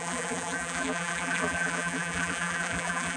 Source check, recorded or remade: remade